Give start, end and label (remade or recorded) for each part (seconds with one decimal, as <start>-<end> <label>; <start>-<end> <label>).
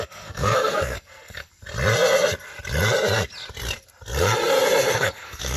0.0-1.5 remade; 1.5-4.9 recorded; 4.9-5.6 remade